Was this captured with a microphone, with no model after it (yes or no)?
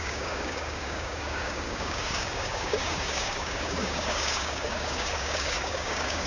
no